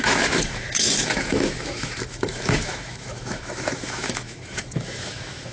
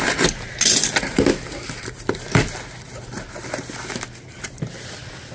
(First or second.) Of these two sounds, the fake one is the first